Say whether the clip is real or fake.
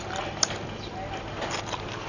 real